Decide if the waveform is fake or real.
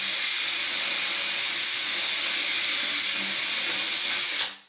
real